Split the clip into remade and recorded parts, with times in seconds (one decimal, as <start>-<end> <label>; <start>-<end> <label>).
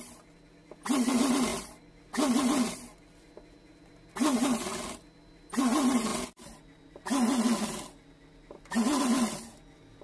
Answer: 0.0-10.0 recorded